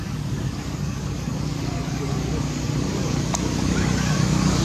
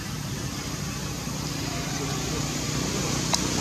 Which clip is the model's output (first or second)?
first